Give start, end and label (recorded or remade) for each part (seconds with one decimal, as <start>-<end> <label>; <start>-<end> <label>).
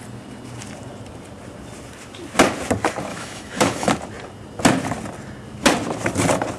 0.0-3.1 recorded; 3.1-3.9 remade; 3.9-6.6 recorded